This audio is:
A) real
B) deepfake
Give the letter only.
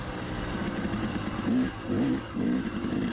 B